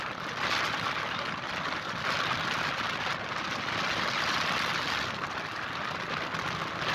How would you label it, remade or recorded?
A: recorded